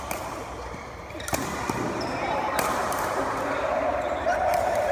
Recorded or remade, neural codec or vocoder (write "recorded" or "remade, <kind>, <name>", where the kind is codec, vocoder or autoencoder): remade, vocoder, BigVGAN v2